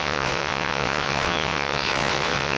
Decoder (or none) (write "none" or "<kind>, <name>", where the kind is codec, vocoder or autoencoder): vocoder, WaveNeXt